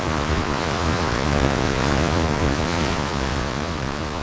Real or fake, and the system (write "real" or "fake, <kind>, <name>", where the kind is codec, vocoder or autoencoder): fake, vocoder, Vocos